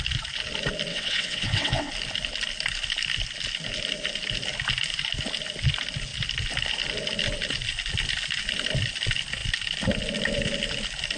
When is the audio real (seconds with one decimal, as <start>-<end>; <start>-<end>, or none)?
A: 0.0-0.9; 1.9-11.2

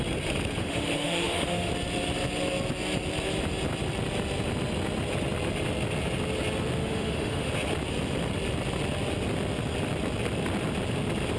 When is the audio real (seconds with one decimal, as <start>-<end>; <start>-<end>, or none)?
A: 0.0-0.6; 1.7-6.8; 7.5-11.4

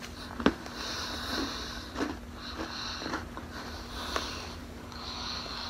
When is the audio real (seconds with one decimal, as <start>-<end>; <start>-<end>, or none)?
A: 0.0-4.6

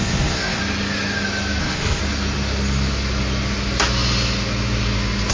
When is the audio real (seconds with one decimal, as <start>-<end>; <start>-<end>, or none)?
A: 0.6-1.6; 2.0-5.3

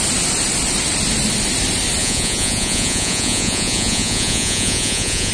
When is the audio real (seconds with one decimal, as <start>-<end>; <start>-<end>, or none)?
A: 0.0-2.0

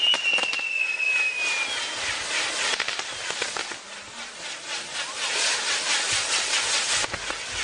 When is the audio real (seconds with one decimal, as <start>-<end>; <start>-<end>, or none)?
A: 0.0-7.6

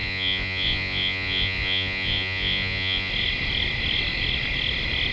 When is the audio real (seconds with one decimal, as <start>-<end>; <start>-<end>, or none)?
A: 3.1-5.1